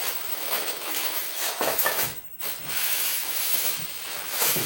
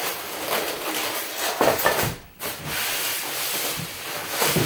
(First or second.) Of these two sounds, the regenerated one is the first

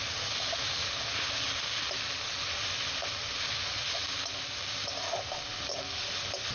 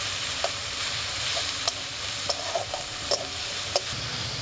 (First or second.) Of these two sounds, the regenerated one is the second